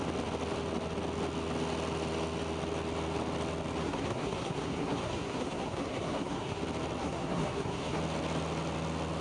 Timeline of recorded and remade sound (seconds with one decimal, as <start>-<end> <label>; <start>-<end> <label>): 0.0-3.8 recorded; 3.8-6.6 remade; 6.6-7.0 recorded; 7.0-8.0 remade; 8.0-9.2 recorded